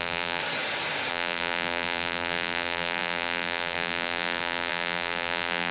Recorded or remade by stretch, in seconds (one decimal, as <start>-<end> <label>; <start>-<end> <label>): 0.0-0.4 remade; 0.4-1.1 recorded; 1.1-5.7 remade